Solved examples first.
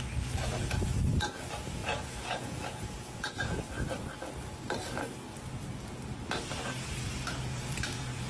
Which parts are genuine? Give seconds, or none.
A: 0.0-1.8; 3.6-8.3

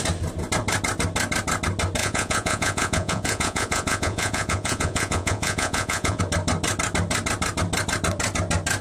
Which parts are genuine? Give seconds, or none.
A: 0.0-2.0; 6.2-8.8

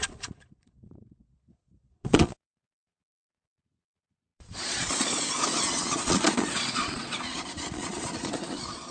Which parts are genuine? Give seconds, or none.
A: none

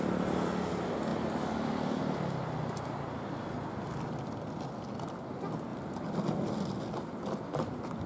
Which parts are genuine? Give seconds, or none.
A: 0.0-8.1

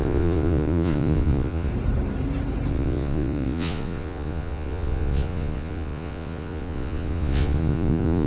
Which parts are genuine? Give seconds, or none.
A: 1.7-2.7

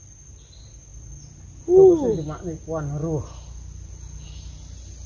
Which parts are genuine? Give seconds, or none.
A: 0.0-5.1

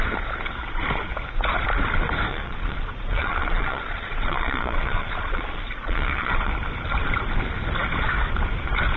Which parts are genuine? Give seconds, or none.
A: 0.0-2.3; 6.5-9.0